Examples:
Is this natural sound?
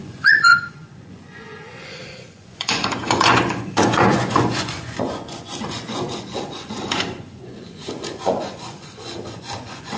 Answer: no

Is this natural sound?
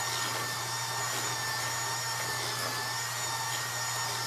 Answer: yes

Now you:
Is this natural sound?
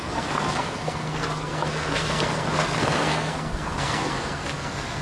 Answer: no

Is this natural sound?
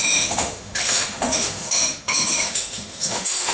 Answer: no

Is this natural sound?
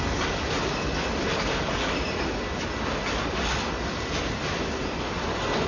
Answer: yes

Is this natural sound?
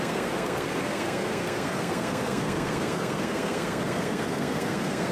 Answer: no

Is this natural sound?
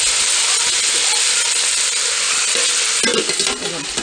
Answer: yes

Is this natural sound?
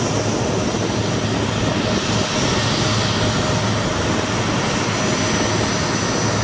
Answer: yes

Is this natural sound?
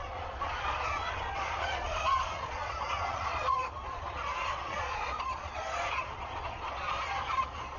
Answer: no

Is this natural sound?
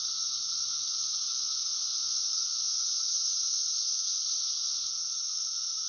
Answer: no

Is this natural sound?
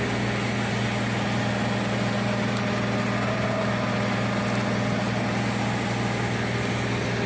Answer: yes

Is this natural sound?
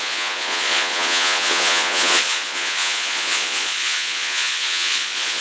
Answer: no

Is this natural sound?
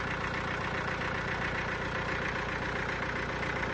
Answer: yes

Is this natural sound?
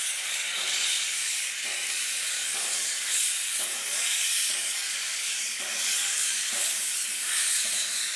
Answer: no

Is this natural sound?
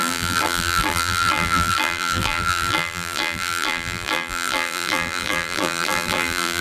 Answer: no